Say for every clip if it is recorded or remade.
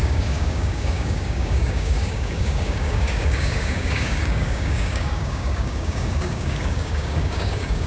remade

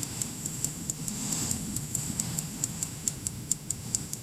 remade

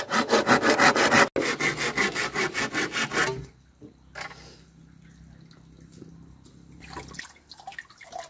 recorded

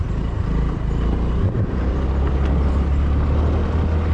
recorded